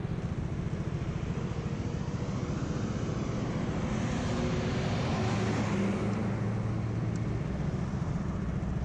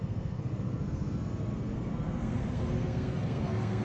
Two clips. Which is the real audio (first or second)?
first